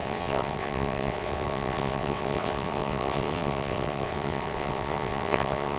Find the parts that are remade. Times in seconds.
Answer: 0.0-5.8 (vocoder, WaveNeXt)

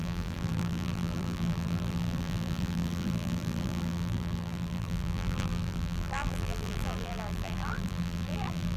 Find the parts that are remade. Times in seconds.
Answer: 0.0-8.8 (vocoder, BigVGAN v2)

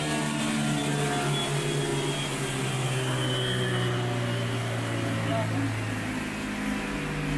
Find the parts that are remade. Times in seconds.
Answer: none

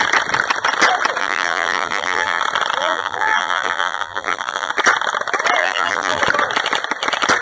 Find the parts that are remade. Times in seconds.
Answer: 1.2-2.4 (vocoder, BigVGAN v2); 2.8-4.7; 5.6-6.2

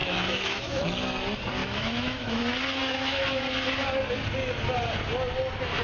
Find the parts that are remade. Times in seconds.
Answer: 0.0-0.8 (autoencoder, DAC-VAE); 1.6-2.4; 2.8-3.4

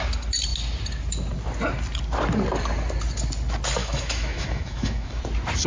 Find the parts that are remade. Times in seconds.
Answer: 3.8-5.2 (autoencoder, DAC-VAE)